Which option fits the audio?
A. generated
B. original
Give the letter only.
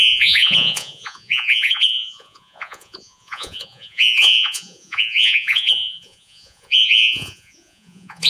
A